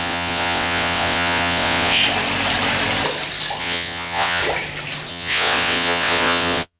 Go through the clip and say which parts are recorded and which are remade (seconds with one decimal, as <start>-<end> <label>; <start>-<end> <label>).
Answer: 0.0-2.0 remade; 2.0-3.6 recorded; 3.6-4.4 remade; 4.4-5.1 recorded; 5.1-6.8 remade